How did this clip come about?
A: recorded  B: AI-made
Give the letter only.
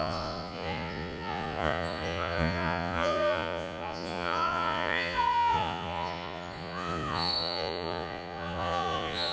B